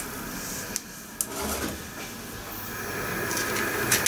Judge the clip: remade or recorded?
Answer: recorded